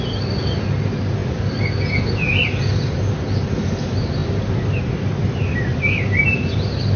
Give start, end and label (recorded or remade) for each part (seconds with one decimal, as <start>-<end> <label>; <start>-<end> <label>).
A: 0.0-7.0 recorded